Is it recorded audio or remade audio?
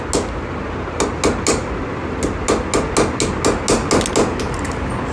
recorded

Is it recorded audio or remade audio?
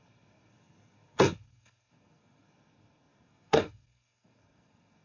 remade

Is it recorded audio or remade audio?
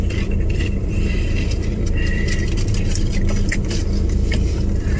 remade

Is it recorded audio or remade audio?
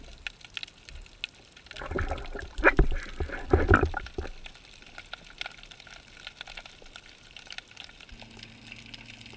recorded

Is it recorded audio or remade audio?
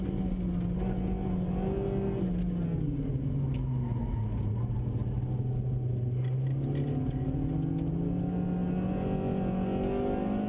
recorded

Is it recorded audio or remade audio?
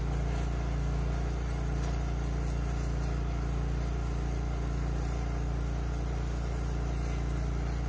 recorded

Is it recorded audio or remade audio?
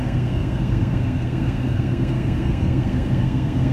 remade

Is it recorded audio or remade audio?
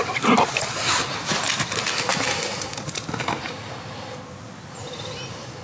recorded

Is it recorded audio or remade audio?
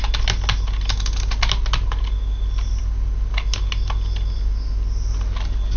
recorded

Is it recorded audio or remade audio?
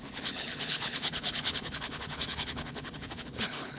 remade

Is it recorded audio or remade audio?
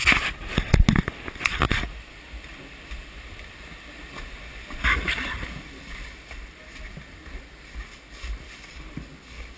recorded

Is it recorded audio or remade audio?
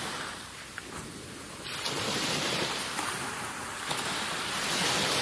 recorded